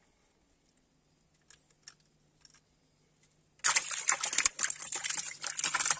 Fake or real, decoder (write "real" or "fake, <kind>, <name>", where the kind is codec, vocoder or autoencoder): real